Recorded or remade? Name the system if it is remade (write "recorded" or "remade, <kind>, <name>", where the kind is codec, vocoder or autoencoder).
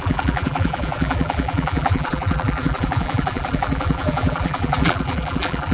remade, vocoder, BigVGAN v2